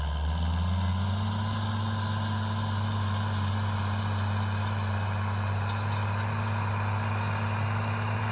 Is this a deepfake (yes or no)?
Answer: no